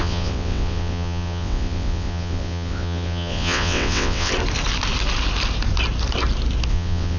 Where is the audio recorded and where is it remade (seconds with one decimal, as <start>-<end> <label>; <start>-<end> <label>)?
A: 0.0-4.3 remade; 4.3-6.7 recorded; 6.7-7.2 remade